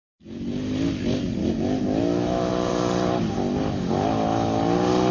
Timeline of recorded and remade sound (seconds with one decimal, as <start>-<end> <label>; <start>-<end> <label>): 0.0-1.4 recorded; 1.4-2.5 remade; 2.5-5.1 recorded

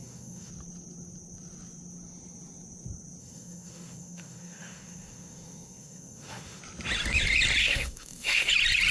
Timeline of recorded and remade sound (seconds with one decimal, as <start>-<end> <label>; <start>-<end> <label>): 0.0-0.5 remade; 0.5-3.2 recorded; 3.2-6.6 remade; 6.6-7.6 recorded; 7.6-8.5 remade; 8.5-8.9 recorded

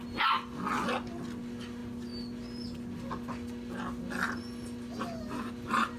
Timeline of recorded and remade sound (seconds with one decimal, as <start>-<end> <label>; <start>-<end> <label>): 0.0-6.0 recorded

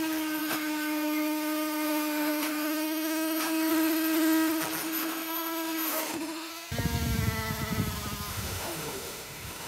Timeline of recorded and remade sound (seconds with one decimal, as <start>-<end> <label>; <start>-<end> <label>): 0.0-0.4 recorded; 0.4-3.7 remade; 3.7-4.8 recorded; 4.8-6.5 remade; 6.5-8.3 recorded; 8.3-9.7 remade

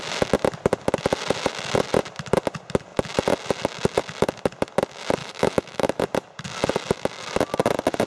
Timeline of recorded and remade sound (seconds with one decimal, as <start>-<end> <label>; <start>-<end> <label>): 0.0-5.2 recorded; 5.2-6.0 remade; 6.0-8.1 recorded

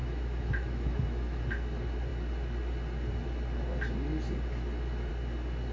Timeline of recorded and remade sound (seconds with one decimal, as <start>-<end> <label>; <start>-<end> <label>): 0.0-1.4 remade; 1.4-5.7 recorded

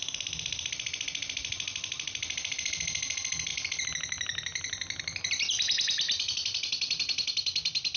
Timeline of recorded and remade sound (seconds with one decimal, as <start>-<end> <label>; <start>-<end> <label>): 0.0-8.0 recorded